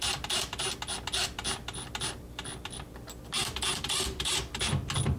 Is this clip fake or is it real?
real